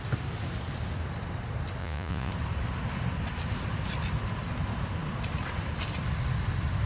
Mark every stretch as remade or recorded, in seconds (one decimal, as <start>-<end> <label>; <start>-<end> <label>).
0.0-1.8 recorded; 1.8-2.3 remade; 2.3-6.9 recorded